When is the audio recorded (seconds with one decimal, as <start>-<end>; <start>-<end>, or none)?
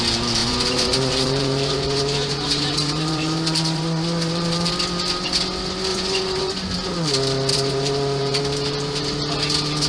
0.0-0.4; 4.7-5.9; 6.5-7.5; 8.4-9.9